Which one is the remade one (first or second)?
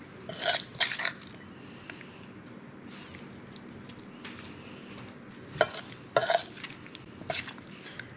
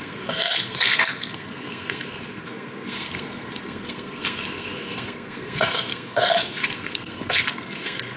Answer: second